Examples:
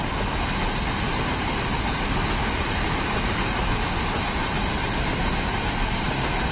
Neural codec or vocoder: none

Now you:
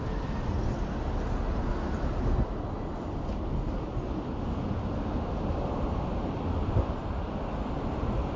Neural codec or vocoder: none